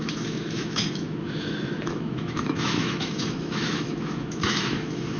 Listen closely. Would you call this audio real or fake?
fake